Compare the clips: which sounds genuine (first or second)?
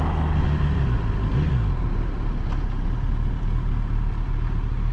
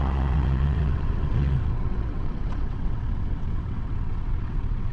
first